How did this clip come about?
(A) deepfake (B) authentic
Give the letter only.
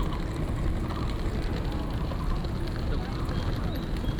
B